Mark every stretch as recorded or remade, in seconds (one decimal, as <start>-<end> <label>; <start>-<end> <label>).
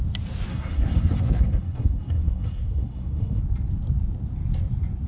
0.0-0.5 recorded; 0.5-3.4 remade; 3.4-5.1 recorded